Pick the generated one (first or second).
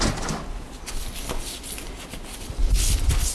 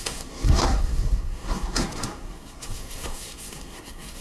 second